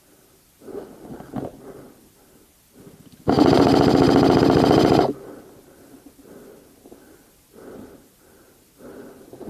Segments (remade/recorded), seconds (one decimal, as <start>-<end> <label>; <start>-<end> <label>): 0.0-9.5 recorded